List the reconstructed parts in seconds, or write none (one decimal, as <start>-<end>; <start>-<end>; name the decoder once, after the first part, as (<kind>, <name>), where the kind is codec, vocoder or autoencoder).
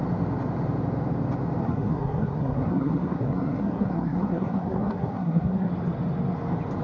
1.6-5.7 (codec, SNAC)